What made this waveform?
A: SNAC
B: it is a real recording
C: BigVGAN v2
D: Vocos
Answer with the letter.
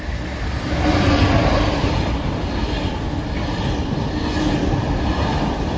B